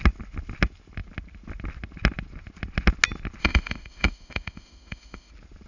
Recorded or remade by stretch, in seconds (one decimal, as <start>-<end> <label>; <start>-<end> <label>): 0.0-3.4 recorded; 3.4-5.3 remade; 5.3-5.7 recorded